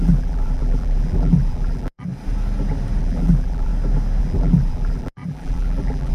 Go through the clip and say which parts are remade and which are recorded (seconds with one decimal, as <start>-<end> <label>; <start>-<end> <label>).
0.0-2.1 remade; 2.1-3.0 recorded; 3.0-3.7 remade; 3.7-4.2 recorded; 4.2-6.1 remade